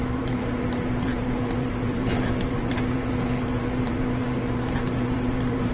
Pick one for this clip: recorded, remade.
remade